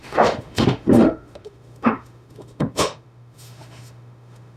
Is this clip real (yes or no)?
no